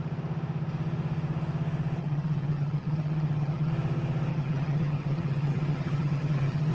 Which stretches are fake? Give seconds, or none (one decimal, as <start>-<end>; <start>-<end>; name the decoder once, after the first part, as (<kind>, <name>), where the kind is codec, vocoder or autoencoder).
2.0-3.7 (vocoder, HiFi-GAN); 4.3-6.7